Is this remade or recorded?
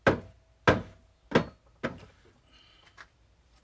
recorded